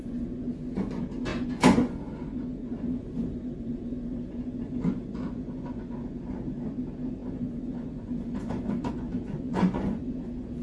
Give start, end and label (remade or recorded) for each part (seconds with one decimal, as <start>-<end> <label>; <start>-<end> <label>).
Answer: 0.0-10.6 remade